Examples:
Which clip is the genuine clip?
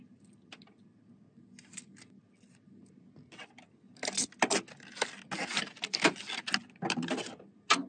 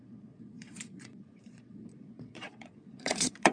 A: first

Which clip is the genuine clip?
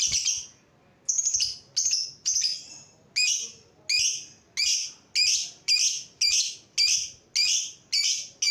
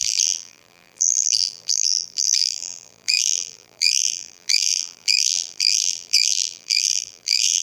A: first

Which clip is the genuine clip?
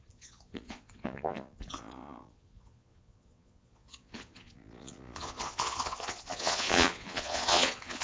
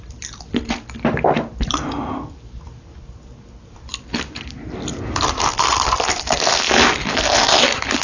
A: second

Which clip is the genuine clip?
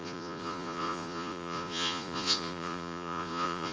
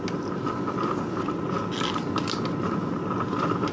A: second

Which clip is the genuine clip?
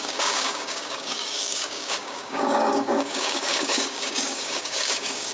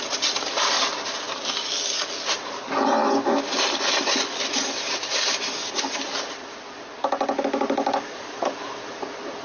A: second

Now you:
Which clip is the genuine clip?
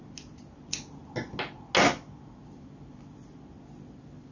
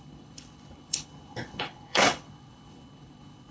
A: first